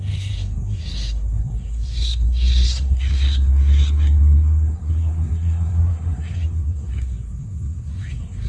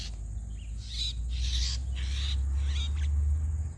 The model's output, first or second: first